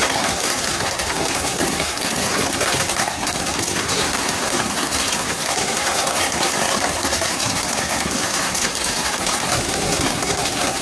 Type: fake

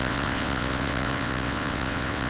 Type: fake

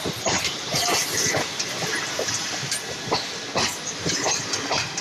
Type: real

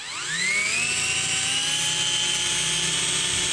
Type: real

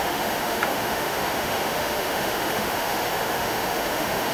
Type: fake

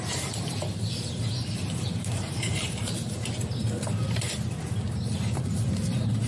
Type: fake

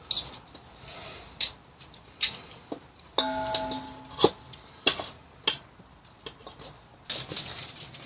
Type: real